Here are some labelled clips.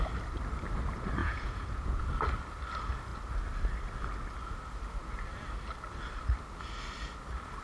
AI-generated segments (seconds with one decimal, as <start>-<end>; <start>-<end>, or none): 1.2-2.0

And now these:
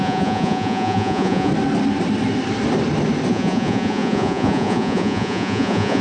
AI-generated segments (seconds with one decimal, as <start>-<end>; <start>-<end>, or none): 0.0-1.5; 3.3-6.0

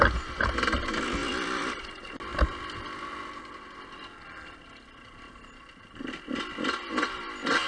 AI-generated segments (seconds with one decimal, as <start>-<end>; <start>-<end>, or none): none

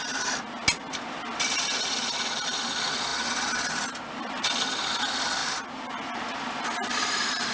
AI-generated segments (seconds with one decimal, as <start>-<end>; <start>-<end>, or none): none

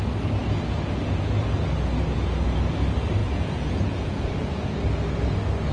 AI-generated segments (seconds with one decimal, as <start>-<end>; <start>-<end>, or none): 3.2-4.8